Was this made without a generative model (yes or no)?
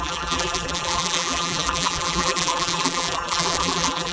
no